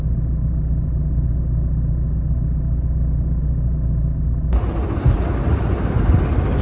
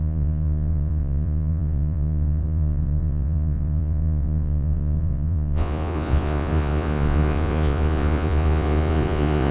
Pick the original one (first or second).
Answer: first